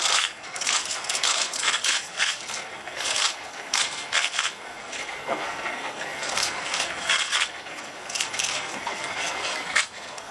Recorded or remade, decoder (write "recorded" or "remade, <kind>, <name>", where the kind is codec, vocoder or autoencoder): remade, codec, SNAC